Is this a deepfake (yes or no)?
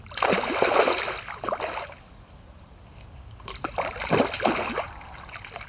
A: no